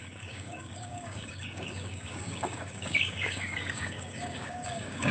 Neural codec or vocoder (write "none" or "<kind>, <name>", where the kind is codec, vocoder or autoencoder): codec, DAC